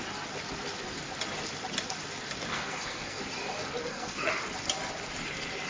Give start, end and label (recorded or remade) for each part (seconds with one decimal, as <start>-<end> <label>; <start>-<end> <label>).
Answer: 0.0-2.5 recorded; 2.5-3.2 remade; 3.2-3.8 recorded; 3.8-4.3 remade; 4.3-5.7 recorded